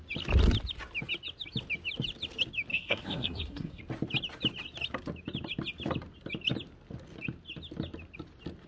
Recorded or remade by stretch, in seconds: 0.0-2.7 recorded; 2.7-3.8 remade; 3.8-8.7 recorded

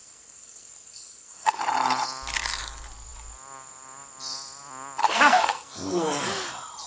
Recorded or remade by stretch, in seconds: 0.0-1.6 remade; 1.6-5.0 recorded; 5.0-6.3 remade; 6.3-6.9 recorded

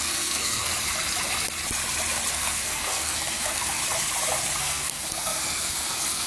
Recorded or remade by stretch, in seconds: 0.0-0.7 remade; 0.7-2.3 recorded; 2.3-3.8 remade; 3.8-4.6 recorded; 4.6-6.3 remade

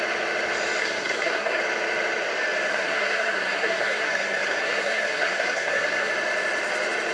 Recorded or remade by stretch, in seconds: 0.0-0.8 recorded; 0.8-1.6 remade; 1.6-2.7 recorded; 2.7-6.1 remade; 6.1-7.1 recorded

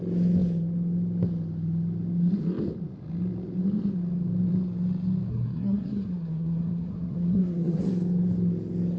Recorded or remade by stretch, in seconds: 0.0-5.3 recorded; 5.3-7.8 remade; 7.8-9.0 recorded

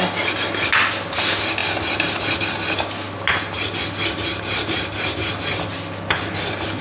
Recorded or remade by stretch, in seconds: 0.0-6.8 recorded

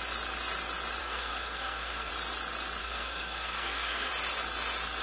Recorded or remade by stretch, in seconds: 0.0-1.0 recorded; 1.0-2.1 remade; 2.1-2.8 recorded; 2.8-4.1 remade; 4.1-5.0 recorded